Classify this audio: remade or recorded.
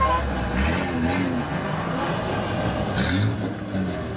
recorded